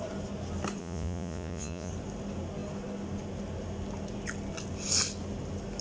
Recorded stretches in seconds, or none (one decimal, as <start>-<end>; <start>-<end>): 0.0-0.8; 1.9-5.8